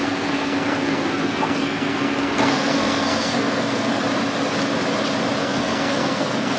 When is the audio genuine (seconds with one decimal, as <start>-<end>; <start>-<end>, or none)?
4.0-5.4